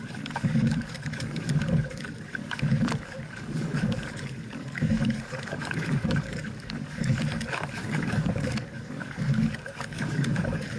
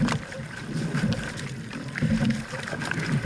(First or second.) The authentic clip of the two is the second